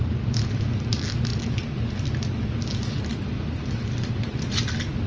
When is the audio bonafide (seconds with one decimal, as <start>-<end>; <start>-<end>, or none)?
0.0-5.1